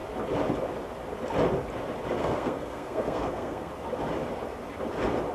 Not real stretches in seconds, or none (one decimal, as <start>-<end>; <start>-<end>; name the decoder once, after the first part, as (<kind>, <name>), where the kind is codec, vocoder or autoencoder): 2.2-3.7 (codec, SNAC)